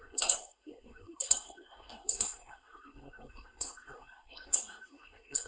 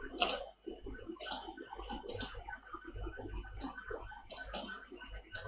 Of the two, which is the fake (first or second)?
first